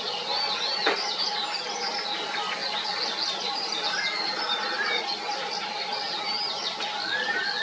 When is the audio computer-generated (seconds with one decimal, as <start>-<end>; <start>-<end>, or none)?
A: none

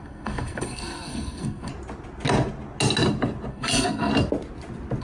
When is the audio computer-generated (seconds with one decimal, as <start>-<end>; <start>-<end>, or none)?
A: 0.0-1.7; 3.5-4.1